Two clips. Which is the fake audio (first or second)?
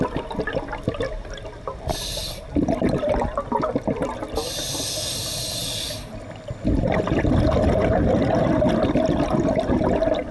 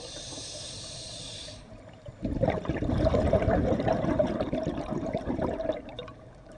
second